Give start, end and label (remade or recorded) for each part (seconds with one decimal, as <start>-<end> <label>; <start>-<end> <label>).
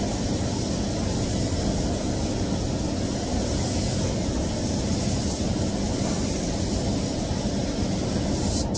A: 0.0-8.8 recorded